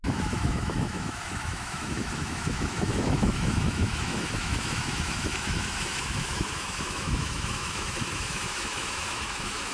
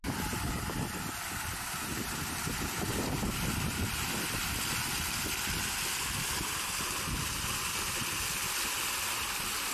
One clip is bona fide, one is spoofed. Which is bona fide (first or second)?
second